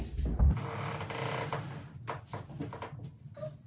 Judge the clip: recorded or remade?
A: recorded